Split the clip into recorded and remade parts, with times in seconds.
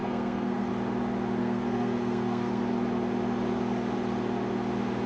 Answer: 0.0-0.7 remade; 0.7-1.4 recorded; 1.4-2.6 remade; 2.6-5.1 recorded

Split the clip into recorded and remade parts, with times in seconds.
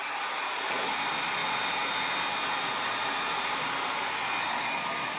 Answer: 0.0-5.2 recorded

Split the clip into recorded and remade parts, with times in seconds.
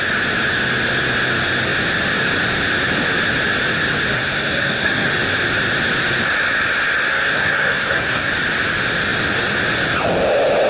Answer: 0.0-4.1 recorded; 4.1-5.1 remade; 5.1-7.1 recorded; 7.1-8.3 remade; 8.3-10.7 recorded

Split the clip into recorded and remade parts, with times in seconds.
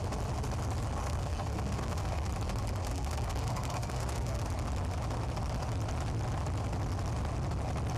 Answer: 0.0-1.0 recorded; 1.0-2.3 remade; 2.3-2.8 recorded; 2.8-4.4 remade; 4.4-8.0 recorded